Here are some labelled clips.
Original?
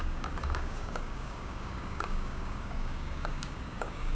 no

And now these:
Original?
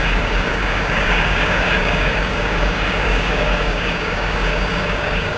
no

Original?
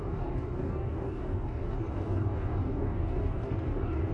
no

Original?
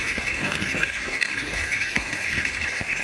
no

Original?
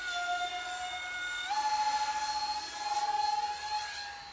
yes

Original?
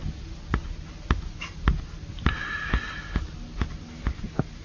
yes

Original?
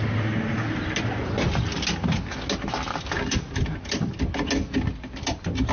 yes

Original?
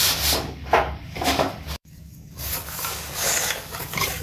no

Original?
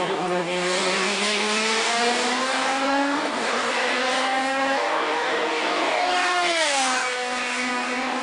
no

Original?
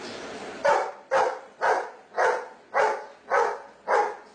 yes